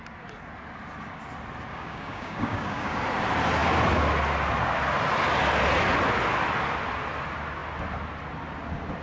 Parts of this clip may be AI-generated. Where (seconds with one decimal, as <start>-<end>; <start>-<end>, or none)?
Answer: 1.7-3.0